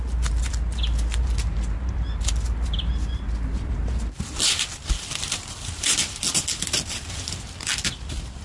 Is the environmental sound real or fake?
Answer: real